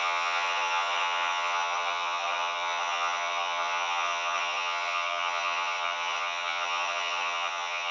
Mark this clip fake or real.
fake